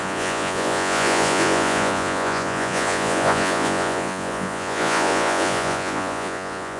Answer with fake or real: fake